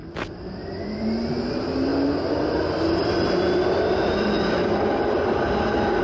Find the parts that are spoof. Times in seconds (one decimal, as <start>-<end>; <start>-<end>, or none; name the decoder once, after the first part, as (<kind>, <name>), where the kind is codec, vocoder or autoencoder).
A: none